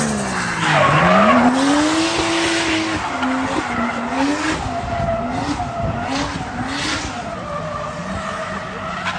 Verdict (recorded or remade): recorded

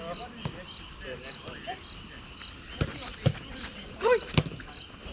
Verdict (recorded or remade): recorded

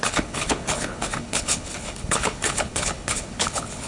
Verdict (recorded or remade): remade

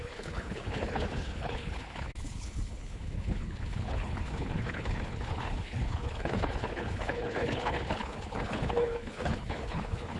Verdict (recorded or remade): remade